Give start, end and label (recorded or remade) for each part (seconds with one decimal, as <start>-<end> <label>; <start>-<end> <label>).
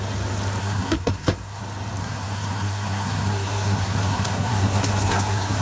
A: 0.0-0.6 recorded; 0.6-1.6 remade; 1.6-2.0 recorded; 2.0-5.6 remade